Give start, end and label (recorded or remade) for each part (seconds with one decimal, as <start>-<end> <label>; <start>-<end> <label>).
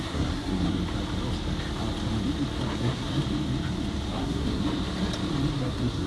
0.0-0.8 remade; 0.8-2.8 recorded; 2.8-3.2 remade; 3.2-4.1 recorded; 4.1-4.6 remade; 4.6-5.5 recorded; 5.5-6.1 remade